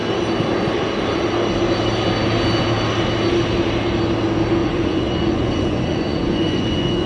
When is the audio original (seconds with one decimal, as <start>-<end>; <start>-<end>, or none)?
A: 0.0-4.6